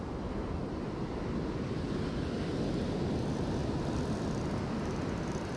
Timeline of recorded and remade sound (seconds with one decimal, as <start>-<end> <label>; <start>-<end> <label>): 0.0-5.6 recorded